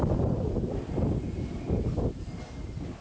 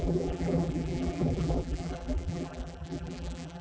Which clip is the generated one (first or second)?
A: second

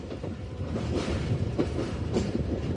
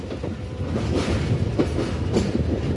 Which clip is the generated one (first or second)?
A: first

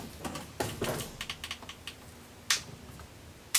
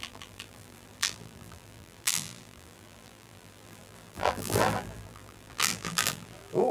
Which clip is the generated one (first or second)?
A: second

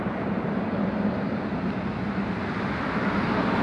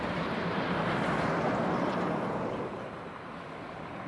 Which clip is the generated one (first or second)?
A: second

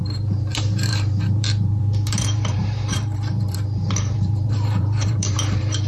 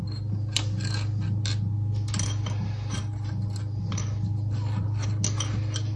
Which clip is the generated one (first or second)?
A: first